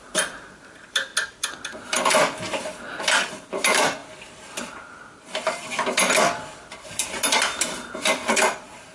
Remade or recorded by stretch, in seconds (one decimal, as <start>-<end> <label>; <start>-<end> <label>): 0.0-1.1 remade; 1.1-3.3 recorded; 3.3-4.0 remade; 4.0-6.7 recorded; 6.7-8.9 remade